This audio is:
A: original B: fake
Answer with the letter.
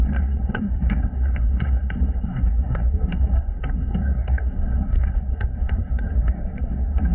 B